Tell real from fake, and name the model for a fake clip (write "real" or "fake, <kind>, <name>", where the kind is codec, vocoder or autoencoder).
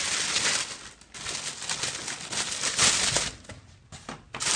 real